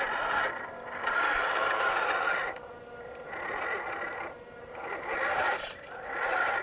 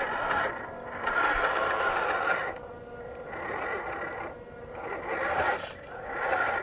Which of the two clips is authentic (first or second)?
second